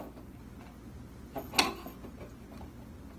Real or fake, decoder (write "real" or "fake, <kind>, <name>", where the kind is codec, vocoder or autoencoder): real